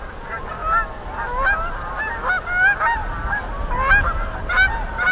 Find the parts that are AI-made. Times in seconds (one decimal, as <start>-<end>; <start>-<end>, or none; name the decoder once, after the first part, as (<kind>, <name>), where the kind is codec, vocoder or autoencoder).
none